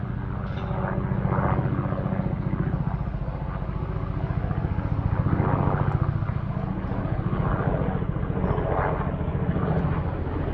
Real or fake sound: real